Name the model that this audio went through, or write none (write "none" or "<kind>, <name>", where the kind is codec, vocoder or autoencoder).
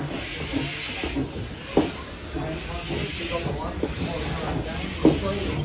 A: none